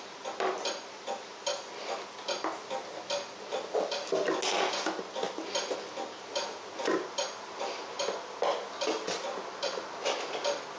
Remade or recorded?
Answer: recorded